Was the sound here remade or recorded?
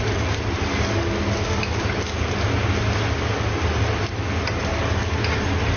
recorded